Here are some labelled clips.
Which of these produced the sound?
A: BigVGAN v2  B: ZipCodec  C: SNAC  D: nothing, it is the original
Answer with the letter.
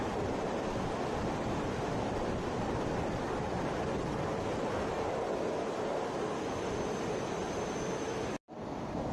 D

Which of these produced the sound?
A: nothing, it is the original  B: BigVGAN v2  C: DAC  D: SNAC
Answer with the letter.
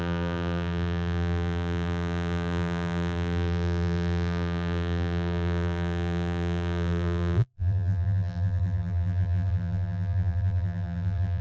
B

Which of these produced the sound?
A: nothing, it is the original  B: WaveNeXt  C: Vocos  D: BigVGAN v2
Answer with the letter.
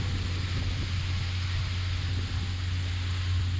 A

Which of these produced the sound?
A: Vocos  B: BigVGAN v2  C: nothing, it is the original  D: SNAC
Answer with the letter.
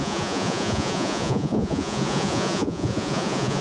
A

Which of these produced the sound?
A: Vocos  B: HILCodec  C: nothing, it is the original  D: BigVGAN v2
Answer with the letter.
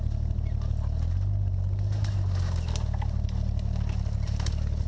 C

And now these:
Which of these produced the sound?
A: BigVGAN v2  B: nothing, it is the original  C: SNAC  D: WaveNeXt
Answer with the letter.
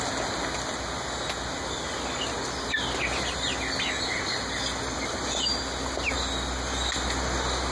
B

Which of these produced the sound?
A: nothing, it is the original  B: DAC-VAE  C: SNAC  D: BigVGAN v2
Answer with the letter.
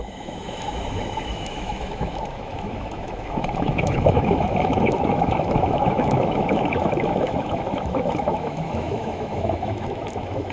B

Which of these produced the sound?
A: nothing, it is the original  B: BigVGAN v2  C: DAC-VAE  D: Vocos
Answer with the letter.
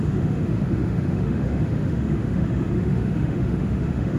C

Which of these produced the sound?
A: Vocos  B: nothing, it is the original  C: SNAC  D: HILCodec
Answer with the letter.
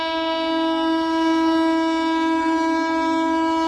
B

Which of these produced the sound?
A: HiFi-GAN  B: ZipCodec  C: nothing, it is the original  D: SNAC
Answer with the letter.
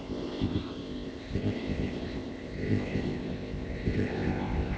B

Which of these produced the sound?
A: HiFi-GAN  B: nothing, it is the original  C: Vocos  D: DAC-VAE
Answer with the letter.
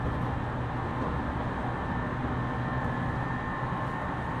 B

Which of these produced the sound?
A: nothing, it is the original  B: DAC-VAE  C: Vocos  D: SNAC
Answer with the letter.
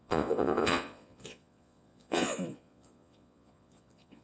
C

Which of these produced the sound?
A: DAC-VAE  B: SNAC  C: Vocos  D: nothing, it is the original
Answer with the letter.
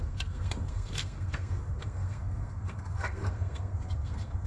B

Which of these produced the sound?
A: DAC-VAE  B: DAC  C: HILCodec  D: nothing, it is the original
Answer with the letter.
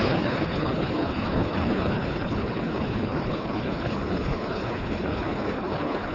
C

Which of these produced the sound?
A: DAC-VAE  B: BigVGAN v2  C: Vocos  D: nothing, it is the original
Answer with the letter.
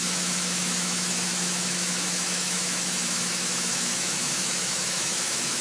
A